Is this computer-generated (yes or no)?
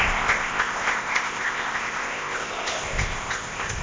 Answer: yes